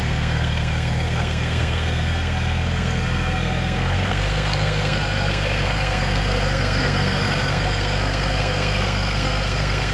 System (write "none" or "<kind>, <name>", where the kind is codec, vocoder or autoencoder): codec, SNAC